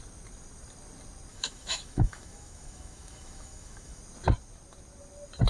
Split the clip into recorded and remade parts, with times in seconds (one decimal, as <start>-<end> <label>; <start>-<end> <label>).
0.0-1.3 recorded; 1.3-4.0 remade; 4.0-5.5 recorded